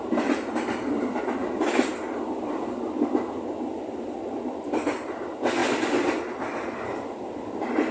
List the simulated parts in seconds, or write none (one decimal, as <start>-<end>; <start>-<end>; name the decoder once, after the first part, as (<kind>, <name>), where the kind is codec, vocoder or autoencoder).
none